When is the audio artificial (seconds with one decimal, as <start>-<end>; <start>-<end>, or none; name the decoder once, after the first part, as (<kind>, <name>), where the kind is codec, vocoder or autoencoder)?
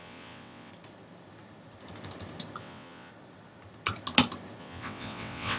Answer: 0.0-0.7 (vocoder, WaveNeXt); 2.6-3.1; 4.6-5.6